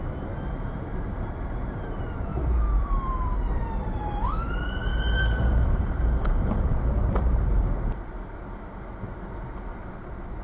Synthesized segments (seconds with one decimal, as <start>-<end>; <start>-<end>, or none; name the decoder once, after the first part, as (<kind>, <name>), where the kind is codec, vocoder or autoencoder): 2.3-4.5 (vocoder, BigVGAN v2); 4.9-8.2